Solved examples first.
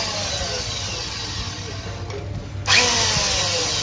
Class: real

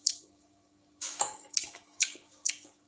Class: fake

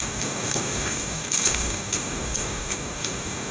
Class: fake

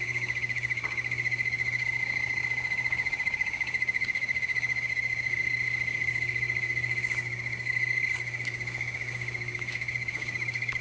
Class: fake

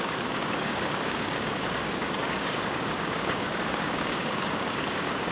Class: fake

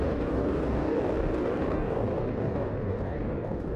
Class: fake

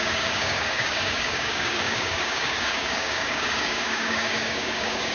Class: fake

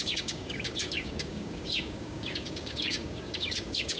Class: fake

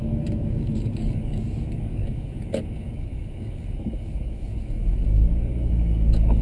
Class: fake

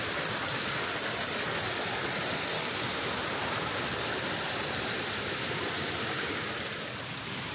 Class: real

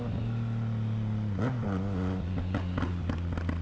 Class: real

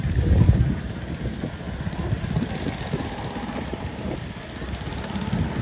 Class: real